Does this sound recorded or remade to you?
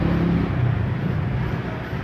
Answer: recorded